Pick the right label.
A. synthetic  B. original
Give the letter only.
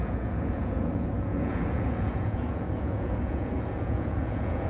A